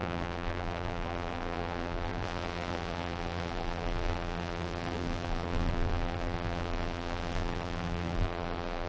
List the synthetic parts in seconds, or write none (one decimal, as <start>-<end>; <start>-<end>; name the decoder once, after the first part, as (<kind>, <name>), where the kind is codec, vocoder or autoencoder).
0.0-8.9 (vocoder, BigVGAN v2)